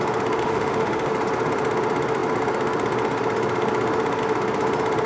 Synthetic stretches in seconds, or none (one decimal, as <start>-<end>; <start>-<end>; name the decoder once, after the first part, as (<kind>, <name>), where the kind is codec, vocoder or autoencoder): 0.4-1.1 (autoencoder, DAC-VAE)